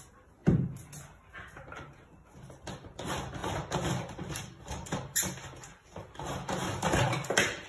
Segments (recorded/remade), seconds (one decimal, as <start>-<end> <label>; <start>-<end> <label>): 0.0-3.4 recorded; 3.4-7.7 remade